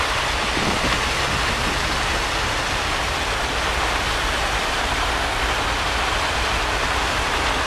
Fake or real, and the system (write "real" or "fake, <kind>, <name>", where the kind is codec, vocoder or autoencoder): real